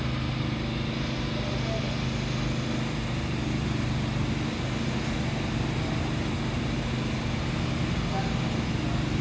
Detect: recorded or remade recorded